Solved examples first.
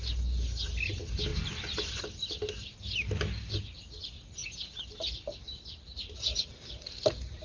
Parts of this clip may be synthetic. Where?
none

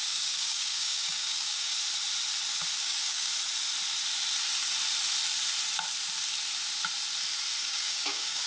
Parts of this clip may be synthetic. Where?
0.0-1.7 (codec, DAC); 2.8-3.3; 7.6-8.5

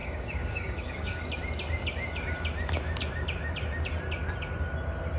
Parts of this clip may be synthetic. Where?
0.0-1.2 (codec, DAC)

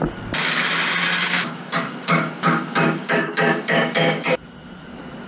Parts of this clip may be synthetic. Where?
1.2-4.4 (codec, DAC)